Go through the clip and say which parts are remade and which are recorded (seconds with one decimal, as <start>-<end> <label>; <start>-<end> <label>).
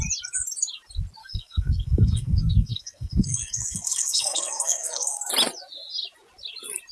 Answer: 0.0-1.2 recorded; 1.2-5.3 remade; 5.3-6.9 recorded